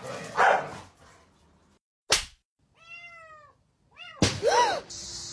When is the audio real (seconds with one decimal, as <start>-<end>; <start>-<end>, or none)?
0.0-5.3